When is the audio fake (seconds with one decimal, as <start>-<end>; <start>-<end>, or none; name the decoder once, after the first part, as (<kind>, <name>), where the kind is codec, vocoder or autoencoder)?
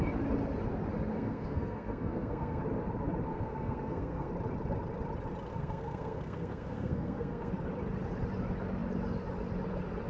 1.1-2.6 (codec, SNAC); 3.3-4.3; 5.5-7.5